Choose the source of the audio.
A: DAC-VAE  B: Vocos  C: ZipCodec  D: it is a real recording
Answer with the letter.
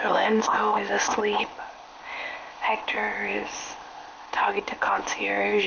C